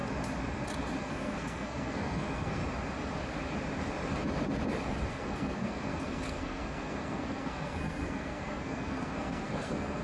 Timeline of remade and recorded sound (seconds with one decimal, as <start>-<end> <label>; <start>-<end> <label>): 0.0-1.0 recorded; 1.0-2.6 remade; 2.6-5.1 recorded; 5.1-10.0 remade